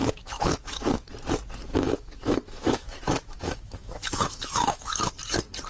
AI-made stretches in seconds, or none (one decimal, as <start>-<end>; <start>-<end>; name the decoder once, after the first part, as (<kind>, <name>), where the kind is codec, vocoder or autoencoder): 0.0-1.1 (autoencoder, DAC-VAE); 1.7-5.1